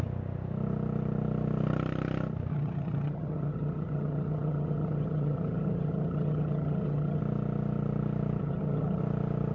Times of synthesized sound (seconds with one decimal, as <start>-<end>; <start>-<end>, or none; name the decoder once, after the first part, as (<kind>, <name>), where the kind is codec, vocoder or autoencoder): 2.5-7.2 (vocoder, HiFi-GAN); 8.4-9.0